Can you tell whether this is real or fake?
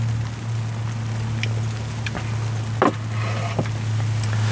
real